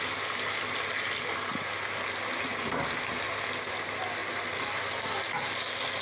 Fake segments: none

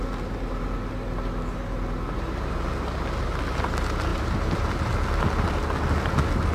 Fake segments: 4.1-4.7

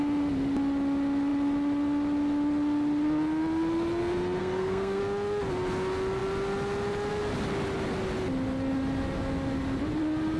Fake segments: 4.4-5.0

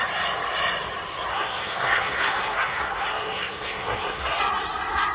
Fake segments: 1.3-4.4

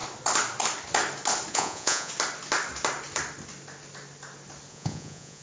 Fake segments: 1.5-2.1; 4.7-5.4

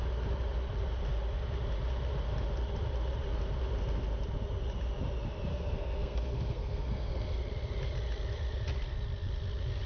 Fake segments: 5.5-7.4

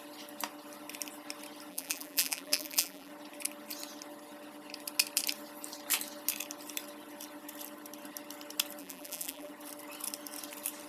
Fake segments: 1.7-3.1; 8.8-9.5

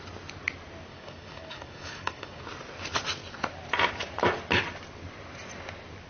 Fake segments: 0.9-2.4